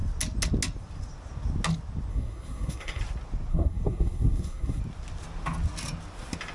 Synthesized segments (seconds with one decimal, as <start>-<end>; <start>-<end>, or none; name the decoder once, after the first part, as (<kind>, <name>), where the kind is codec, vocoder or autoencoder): 2.1-3.0 (codec, SNAC); 3.5-4.8